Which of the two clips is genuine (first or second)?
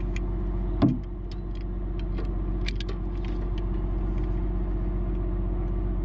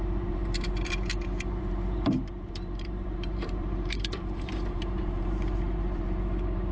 first